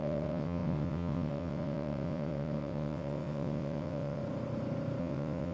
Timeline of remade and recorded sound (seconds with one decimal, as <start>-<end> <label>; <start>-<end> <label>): 0.0-4.2 remade; 4.2-5.0 recorded; 5.0-5.5 remade